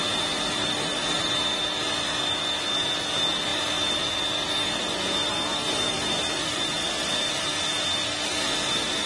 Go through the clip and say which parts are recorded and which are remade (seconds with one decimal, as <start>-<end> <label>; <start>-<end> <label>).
0.0-9.1 recorded